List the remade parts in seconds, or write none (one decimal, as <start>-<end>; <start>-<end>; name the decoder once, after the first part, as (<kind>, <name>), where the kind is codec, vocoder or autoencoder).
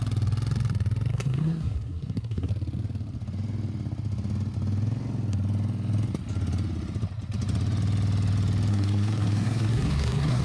1.1-2.5 (codec, SNAC); 8.7-10.4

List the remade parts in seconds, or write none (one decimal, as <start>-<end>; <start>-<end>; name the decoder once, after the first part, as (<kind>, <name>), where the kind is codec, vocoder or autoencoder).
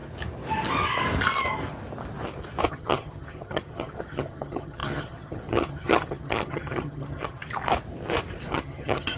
2.7-7.4 (vocoder, HiFi-GAN); 8.5-9.2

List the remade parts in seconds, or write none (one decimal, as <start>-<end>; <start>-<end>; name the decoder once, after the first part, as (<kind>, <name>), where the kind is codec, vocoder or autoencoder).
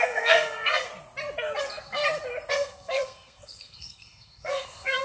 0.0-0.9 (codec, SNAC); 1.6-2.0; 2.5-5.0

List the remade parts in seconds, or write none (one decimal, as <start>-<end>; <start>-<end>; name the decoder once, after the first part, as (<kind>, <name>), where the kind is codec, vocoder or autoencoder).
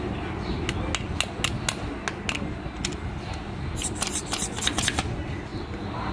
none